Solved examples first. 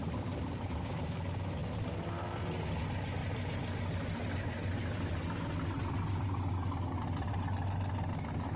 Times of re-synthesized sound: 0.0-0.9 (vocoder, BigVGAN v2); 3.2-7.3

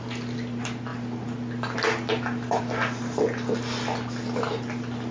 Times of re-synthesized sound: none

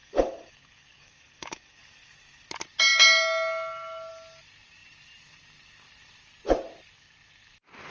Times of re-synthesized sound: 0.0-2.5 (codec, DAC)

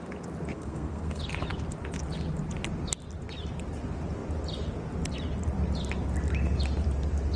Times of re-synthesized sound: 0.5-1.2 (codec, SNAC)